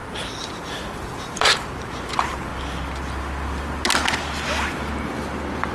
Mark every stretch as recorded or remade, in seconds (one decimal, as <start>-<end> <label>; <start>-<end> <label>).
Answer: 0.0-2.5 remade; 2.5-5.7 recorded